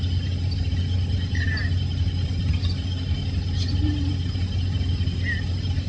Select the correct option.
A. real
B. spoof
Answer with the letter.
A